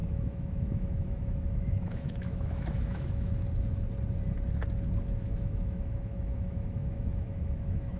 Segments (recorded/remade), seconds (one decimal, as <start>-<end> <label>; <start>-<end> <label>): 0.0-3.4 remade; 3.4-5.0 recorded; 5.0-8.0 remade